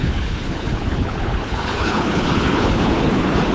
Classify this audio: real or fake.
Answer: fake